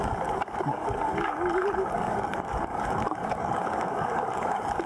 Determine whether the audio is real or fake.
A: fake